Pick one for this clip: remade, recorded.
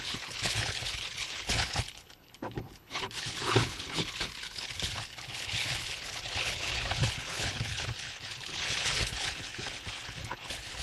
remade